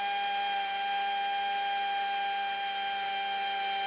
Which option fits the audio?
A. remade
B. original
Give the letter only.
B